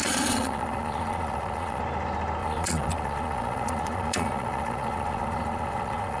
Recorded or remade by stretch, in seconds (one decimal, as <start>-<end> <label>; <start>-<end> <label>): 0.0-1.8 remade; 1.8-2.4 recorded; 2.4-6.2 remade